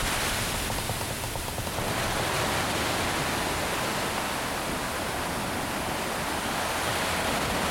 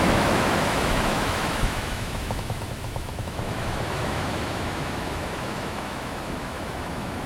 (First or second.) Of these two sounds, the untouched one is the first